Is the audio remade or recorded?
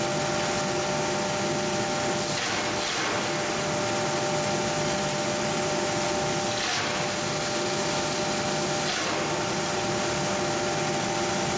recorded